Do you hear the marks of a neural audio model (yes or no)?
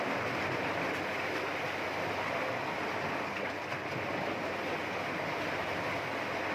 no